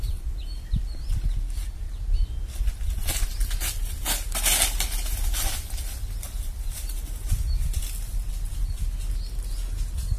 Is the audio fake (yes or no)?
no